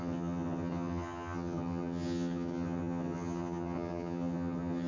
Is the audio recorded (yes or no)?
no